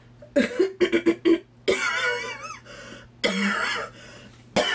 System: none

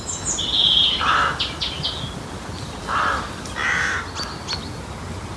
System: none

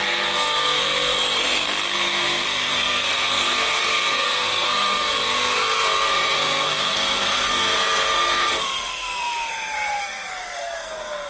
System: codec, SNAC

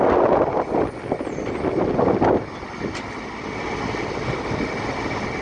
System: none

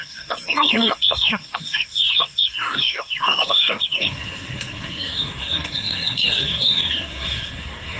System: codec, SNAC